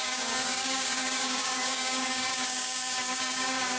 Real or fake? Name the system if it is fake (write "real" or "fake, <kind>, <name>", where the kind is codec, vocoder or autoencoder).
fake, codec, DAC